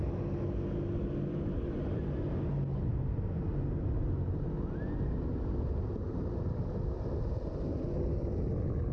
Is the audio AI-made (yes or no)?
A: no